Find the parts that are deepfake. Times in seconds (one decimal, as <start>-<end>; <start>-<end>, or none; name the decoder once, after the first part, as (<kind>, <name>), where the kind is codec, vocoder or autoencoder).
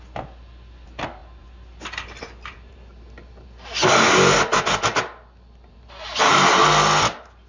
none